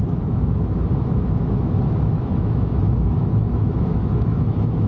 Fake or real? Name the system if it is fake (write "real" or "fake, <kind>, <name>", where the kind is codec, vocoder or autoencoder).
fake, autoencoder, DAC-VAE